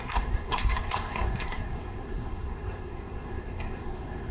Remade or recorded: remade